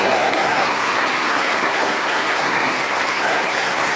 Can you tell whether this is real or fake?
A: fake